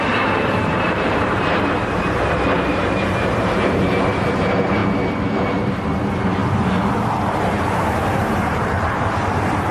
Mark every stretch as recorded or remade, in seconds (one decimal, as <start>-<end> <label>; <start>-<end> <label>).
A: 0.0-4.8 remade; 4.8-5.5 recorded; 5.5-6.4 remade; 6.4-7.4 recorded; 7.4-9.7 remade